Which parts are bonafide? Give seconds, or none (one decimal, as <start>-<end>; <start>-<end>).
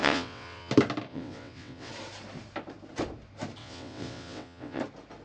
0.7-1.1; 1.9-3.6; 4.8-5.2